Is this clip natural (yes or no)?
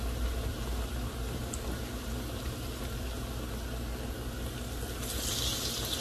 yes